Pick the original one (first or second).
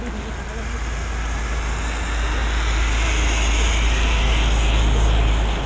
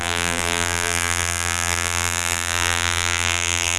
first